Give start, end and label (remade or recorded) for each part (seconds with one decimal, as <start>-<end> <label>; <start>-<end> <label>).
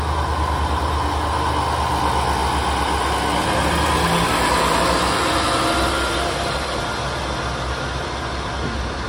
0.0-9.1 recorded